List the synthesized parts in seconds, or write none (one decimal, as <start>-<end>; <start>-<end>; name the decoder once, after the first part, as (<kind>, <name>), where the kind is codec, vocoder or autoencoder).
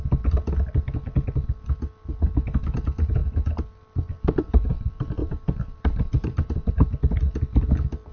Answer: 5.2-6.7 (vocoder, BigVGAN v2)